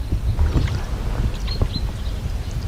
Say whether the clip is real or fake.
real